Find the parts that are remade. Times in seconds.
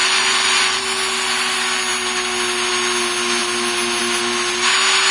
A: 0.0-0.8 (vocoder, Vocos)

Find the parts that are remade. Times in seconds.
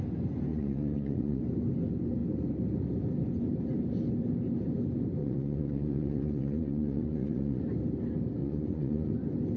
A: 0.5-1.4 (vocoder, Vocos); 5.2-7.6; 8.4-9.1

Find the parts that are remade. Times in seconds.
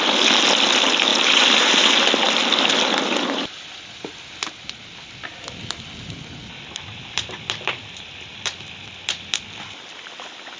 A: none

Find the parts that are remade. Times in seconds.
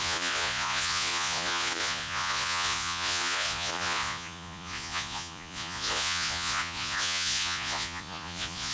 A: 0.0-8.7 (vocoder, Vocos)